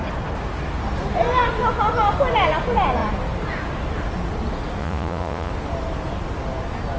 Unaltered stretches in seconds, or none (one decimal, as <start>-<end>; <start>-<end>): 0.0-4.8; 5.5-7.0